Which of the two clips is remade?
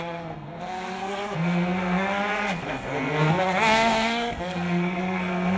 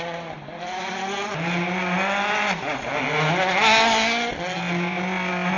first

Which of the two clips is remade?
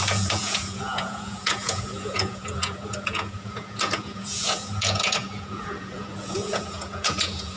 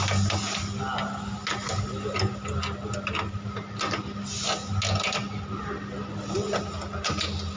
first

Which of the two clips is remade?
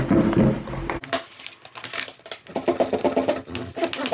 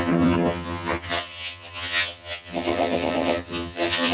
second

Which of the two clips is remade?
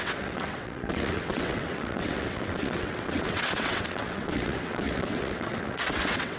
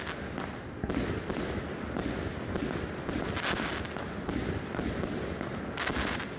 first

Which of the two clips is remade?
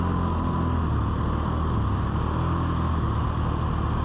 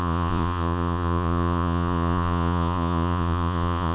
second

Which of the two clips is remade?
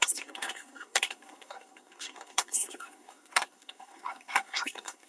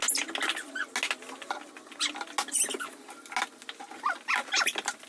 first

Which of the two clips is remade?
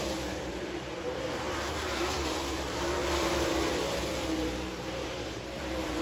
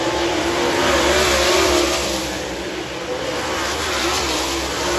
first